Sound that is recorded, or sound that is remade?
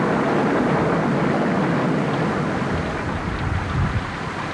recorded